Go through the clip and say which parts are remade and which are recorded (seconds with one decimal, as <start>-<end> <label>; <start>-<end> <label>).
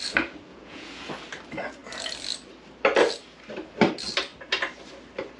0.0-0.5 recorded; 0.5-1.1 remade; 1.1-5.4 recorded